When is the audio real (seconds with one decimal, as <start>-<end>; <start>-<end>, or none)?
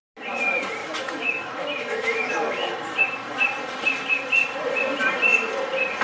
0.0-0.8; 2.7-6.0